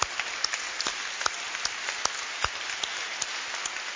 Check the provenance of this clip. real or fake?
real